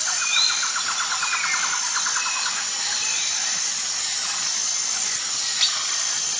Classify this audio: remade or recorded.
recorded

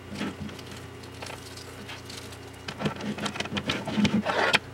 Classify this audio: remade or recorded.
recorded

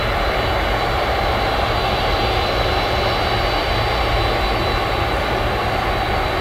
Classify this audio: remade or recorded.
recorded